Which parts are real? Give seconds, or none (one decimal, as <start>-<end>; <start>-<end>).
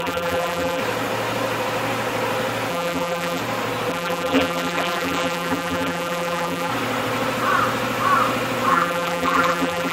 0.8-2.7; 3.4-3.9; 6.7-8.7